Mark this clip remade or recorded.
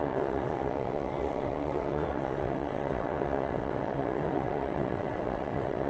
remade